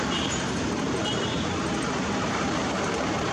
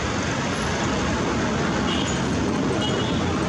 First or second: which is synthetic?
first